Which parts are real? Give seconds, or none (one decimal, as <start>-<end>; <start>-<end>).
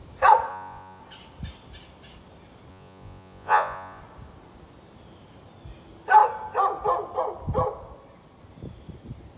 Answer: 0.0-0.5; 1.0-2.7; 4.0-9.4